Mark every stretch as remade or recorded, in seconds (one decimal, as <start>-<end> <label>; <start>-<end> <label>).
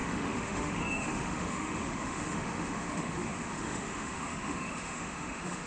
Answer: 0.0-5.7 remade